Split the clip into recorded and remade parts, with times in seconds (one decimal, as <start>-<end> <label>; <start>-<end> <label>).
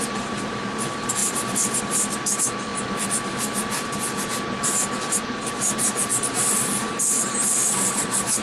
0.0-2.7 remade; 2.7-5.2 recorded; 5.2-8.4 remade